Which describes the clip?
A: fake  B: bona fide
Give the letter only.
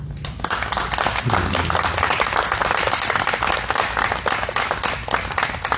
B